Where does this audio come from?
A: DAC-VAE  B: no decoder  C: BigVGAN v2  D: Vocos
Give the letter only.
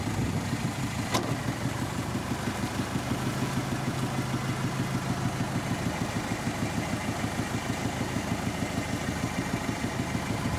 B